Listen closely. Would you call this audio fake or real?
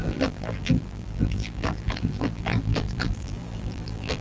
fake